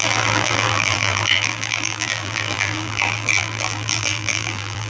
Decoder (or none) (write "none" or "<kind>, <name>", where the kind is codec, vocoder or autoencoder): vocoder, BigVGAN v2